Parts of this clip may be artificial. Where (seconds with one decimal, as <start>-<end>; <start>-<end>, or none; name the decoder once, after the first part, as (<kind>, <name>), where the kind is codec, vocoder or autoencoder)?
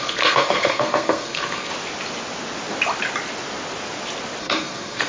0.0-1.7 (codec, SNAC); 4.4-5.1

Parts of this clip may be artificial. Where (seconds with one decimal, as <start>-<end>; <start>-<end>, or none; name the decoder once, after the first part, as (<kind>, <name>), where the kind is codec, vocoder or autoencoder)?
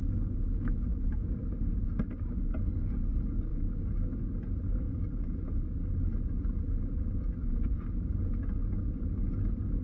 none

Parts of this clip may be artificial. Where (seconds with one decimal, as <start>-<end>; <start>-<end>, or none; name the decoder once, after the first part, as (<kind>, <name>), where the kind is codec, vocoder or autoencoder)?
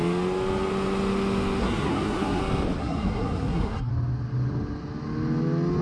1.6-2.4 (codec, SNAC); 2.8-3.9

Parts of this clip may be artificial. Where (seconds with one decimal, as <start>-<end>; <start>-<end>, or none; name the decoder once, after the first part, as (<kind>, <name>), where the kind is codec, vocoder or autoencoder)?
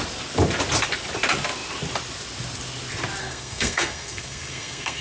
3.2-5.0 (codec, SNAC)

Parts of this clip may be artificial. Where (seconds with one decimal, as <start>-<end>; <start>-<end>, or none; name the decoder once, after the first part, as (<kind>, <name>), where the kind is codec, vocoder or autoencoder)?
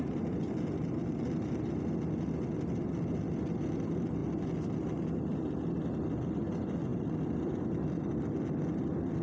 none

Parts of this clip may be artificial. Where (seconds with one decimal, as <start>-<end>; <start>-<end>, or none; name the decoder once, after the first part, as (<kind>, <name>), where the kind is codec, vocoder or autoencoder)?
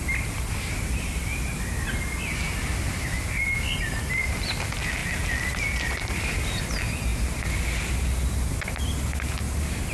none